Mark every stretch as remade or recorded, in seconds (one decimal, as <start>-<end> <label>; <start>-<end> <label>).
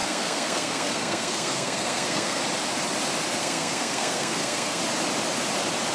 0.0-2.4 remade; 2.4-3.4 recorded; 3.4-4.8 remade; 4.8-5.9 recorded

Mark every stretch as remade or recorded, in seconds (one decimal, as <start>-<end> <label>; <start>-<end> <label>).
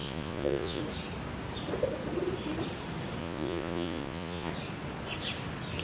0.0-0.8 remade; 0.8-3.2 recorded; 3.2-4.5 remade; 4.5-5.8 recorded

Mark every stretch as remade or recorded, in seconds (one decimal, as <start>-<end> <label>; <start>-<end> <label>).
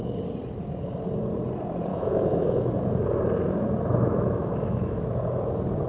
0.0-1.9 recorded; 1.9-2.7 remade; 2.7-4.0 recorded; 4.0-5.0 remade; 5.0-5.9 recorded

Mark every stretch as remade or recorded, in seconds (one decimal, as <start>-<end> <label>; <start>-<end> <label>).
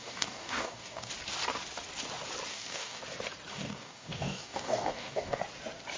0.0-1.1 remade; 1.1-2.5 recorded; 2.5-3.0 remade; 3.0-3.5 recorded; 3.5-5.4 remade; 5.4-6.0 recorded